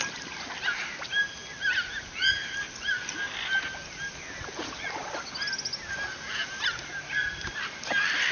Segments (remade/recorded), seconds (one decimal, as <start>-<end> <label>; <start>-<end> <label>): 0.0-8.3 recorded